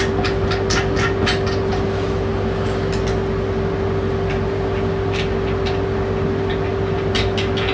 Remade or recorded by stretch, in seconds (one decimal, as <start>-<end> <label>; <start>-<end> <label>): 0.0-7.7 recorded